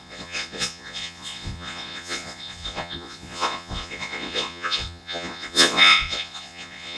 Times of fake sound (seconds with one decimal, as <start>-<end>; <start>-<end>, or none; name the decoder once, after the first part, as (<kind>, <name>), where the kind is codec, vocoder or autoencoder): 0.0-7.0 (vocoder, Vocos)